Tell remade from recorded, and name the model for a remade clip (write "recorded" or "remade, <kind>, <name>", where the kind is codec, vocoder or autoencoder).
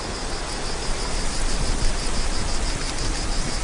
recorded